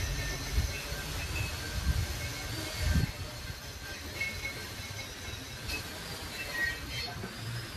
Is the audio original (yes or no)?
yes